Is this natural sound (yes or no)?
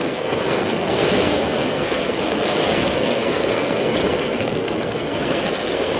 no